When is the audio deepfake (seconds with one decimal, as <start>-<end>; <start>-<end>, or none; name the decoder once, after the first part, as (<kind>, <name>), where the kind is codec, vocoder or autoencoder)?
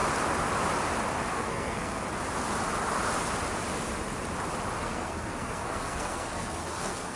1.3-2.0 (codec, SNAC); 4.8-7.1